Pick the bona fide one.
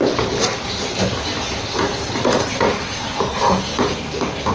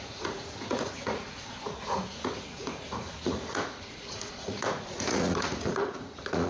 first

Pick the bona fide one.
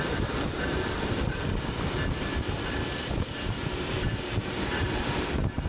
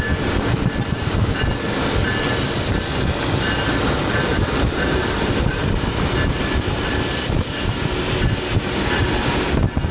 second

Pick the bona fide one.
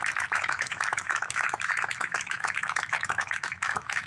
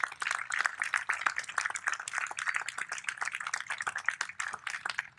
second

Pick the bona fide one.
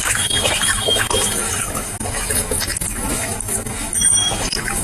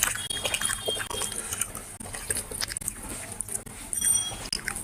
second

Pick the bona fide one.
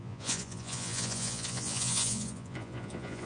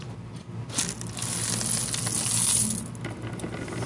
second